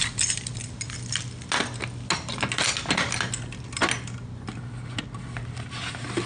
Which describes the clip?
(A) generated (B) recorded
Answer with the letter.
B